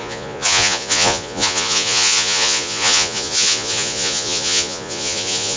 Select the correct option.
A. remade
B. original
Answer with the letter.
A